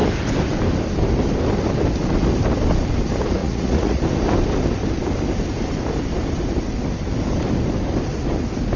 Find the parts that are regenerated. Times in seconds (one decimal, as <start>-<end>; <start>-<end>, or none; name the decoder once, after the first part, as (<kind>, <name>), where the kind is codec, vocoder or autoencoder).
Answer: 3.4-4.0 (vocoder, Vocos)